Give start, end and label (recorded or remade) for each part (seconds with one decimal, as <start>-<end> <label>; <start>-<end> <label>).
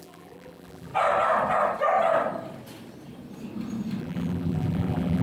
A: 0.0-0.9 remade; 0.9-4.0 recorded; 4.0-5.2 remade